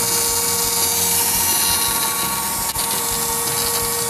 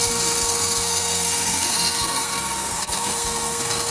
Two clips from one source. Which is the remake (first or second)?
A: second